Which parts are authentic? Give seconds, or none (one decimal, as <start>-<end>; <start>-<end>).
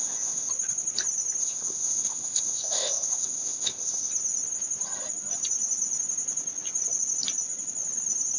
0.5-1.4; 4.1-8.4